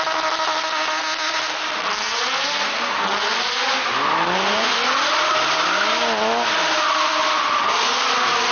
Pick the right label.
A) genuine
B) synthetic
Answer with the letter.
A